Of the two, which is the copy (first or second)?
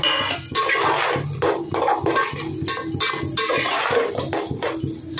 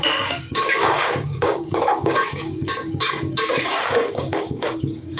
second